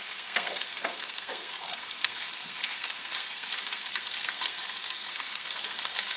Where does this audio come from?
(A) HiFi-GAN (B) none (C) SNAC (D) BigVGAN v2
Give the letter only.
C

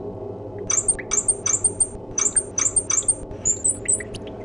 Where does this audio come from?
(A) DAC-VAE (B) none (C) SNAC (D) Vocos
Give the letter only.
B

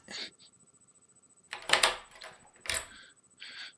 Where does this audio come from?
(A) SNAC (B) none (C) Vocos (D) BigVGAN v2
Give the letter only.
B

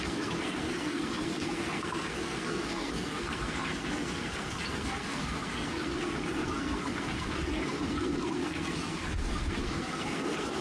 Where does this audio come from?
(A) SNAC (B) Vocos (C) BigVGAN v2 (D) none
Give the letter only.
A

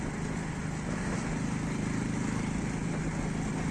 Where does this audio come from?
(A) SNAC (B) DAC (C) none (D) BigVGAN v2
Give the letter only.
C